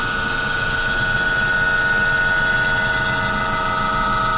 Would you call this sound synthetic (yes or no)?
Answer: no